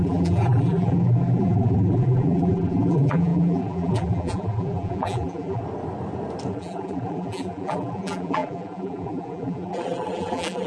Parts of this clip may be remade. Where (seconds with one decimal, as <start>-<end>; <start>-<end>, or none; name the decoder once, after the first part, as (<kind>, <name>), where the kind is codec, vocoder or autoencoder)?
0.0-5.6 (vocoder, BigVGAN v2); 6.5-10.7